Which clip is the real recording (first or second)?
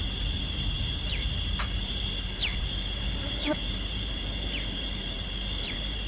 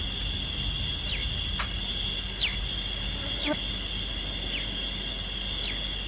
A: second